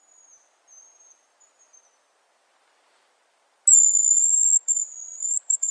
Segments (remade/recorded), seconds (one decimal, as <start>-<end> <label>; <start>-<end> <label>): 0.0-3.7 recorded; 3.7-5.7 remade